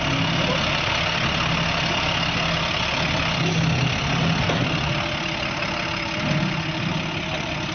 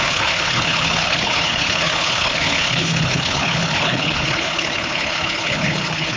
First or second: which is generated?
second